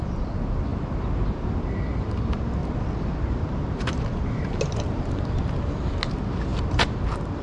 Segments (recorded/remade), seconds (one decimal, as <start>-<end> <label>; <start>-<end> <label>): 0.0-2.6 recorded; 2.6-5.4 remade; 5.4-6.5 recorded; 6.5-7.0 remade; 7.0-7.4 recorded